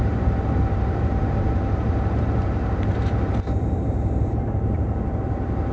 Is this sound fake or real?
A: fake